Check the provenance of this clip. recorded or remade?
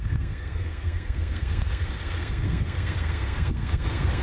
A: remade